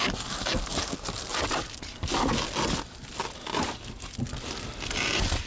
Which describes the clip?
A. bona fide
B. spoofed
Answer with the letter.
A